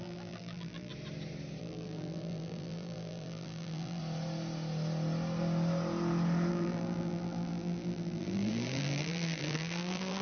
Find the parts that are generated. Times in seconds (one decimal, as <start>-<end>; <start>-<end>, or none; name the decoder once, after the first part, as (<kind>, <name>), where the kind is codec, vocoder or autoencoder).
0.0-0.9 (vocoder, BigVGAN v2); 1.6-4.0; 6.5-10.2